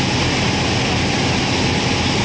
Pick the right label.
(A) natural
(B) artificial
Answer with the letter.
A